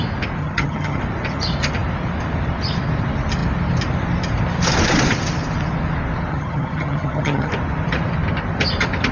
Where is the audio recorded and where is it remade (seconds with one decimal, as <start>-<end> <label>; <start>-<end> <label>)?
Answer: 0.0-0.4 recorded; 0.4-1.0 remade; 1.0-6.3 recorded; 6.3-7.5 remade; 7.5-9.1 recorded

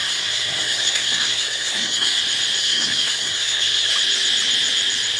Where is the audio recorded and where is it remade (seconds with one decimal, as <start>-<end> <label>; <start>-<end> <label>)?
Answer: 0.0-2.2 remade; 2.2-2.6 recorded; 2.6-3.9 remade; 3.9-5.2 recorded

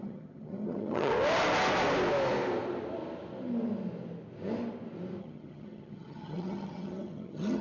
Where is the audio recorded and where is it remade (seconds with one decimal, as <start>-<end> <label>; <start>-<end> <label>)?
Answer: 0.0-1.1 remade; 1.1-5.2 recorded; 5.2-7.6 remade